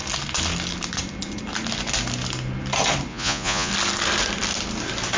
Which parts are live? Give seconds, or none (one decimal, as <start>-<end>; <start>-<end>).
0.0-3.1; 3.7-5.2